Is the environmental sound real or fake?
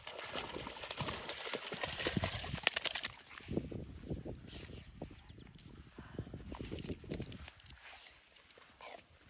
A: real